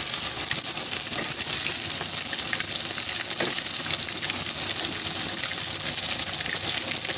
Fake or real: real